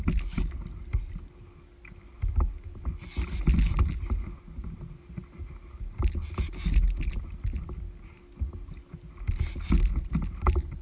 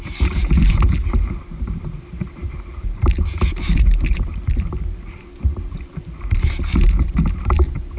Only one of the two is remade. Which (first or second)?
second